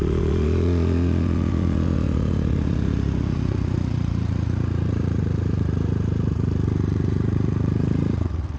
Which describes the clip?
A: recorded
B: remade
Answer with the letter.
B